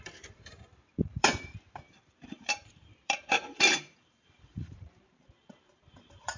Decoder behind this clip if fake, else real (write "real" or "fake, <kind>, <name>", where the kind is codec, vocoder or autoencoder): fake, vocoder, BigVGAN v2